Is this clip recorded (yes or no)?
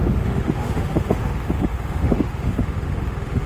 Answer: no